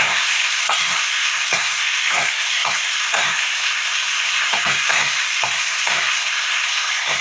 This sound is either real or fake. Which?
fake